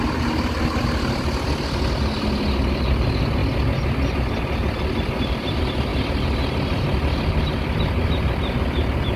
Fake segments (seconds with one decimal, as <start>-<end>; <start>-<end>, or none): none